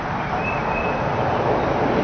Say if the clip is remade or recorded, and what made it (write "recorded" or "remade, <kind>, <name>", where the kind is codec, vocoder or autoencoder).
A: remade, vocoder, BigVGAN v2